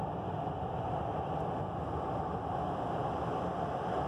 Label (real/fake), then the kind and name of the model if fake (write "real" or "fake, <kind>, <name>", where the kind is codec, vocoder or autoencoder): real